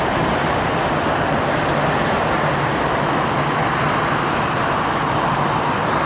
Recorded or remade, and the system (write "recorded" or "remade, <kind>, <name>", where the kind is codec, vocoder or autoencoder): recorded